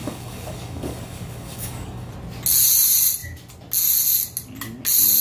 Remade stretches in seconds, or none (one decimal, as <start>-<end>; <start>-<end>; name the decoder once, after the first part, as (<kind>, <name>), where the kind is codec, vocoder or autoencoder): 0.0-2.1 (codec, DAC)